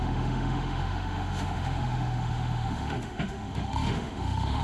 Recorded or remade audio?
remade